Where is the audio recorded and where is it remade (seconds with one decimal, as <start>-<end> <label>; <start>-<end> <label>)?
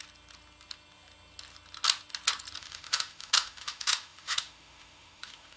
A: 0.0-2.6 recorded; 2.6-5.6 remade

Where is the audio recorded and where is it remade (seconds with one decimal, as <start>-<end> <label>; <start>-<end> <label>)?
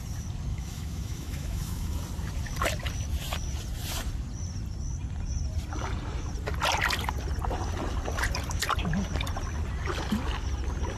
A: 0.0-0.5 recorded; 0.5-2.0 remade; 2.0-11.0 recorded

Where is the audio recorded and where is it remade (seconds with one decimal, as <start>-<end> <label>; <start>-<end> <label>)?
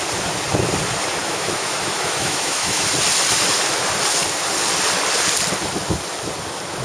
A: 0.0-1.2 recorded; 1.2-2.9 remade; 2.9-6.8 recorded